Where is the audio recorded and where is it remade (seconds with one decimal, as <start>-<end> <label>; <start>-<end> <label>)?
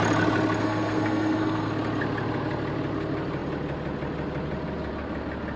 0.0-0.6 recorded; 0.6-1.7 remade; 1.7-5.6 recorded